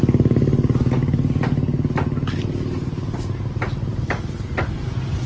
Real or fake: real